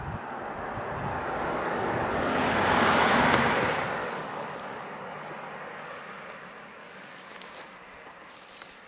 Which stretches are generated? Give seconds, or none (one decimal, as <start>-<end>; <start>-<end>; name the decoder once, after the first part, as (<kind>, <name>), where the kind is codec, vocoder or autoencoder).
1.1-3.2 (codec, DAC); 4.0-6.0; 6.8-7.3